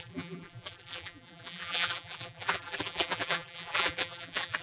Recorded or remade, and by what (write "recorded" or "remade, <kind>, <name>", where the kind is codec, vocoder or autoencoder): remade, vocoder, BigVGAN v2